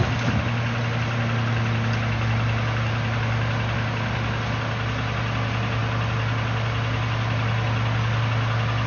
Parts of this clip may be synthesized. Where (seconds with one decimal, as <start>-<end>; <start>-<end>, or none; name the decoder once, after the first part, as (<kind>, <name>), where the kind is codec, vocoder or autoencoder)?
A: none